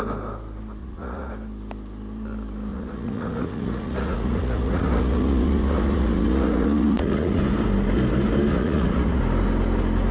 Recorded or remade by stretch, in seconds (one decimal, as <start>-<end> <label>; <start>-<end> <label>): 0.0-0.8 recorded; 0.8-1.3 remade; 1.3-2.7 recorded; 2.7-7.4 remade; 7.4-8.5 recorded; 8.5-9.2 remade; 9.2-10.1 recorded